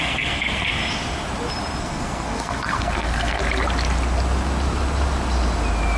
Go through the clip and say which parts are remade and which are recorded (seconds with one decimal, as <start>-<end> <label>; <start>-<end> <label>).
0.0-0.8 remade; 0.8-1.8 recorded; 1.8-3.4 remade; 3.4-6.0 recorded